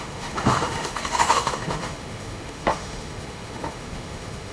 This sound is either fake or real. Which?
fake